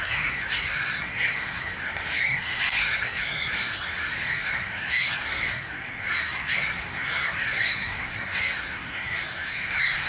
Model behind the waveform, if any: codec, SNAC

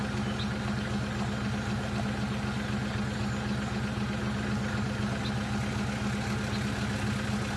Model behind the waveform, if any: none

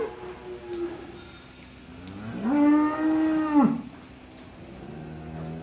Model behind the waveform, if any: none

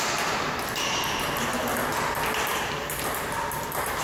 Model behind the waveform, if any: none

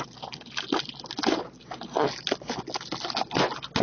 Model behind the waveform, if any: none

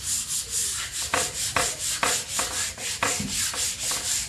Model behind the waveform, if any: none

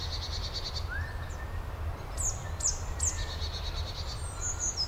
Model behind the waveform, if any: none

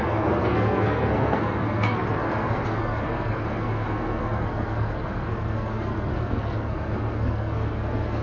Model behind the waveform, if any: codec, SNAC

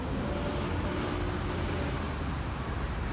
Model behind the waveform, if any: none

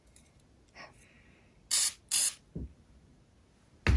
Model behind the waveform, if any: none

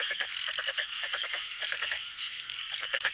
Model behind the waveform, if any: codec, SNAC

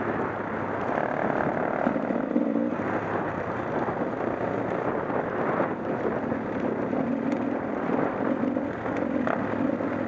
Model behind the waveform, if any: none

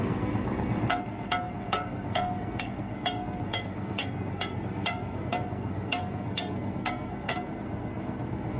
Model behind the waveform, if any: codec, SNAC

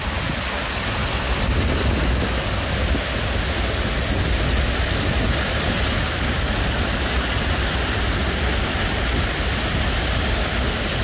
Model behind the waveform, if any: none